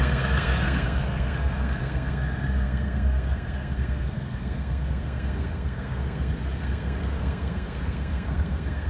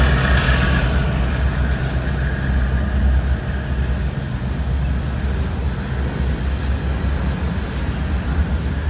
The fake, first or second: first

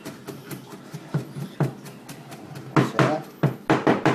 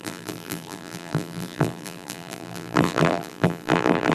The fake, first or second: second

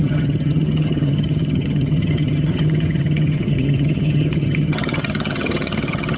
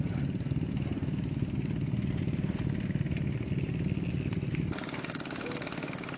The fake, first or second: first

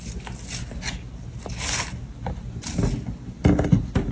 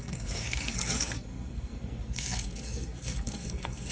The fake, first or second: second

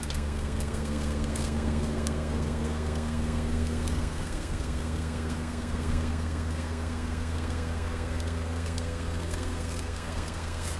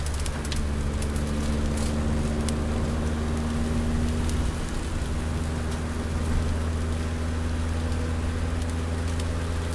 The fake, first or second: first